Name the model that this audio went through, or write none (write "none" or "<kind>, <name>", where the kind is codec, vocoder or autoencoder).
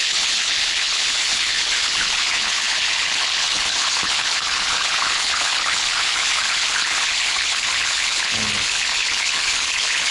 codec, HILCodec